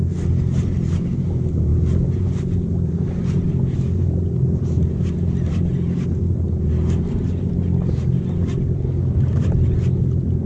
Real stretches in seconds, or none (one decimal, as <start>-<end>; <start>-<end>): 0.0-10.5